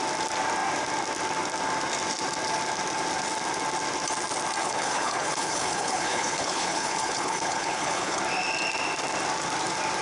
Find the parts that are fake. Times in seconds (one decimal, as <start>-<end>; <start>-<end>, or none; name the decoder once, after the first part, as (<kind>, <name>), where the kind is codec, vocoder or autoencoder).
4.6-8.2 (codec, HILCodec)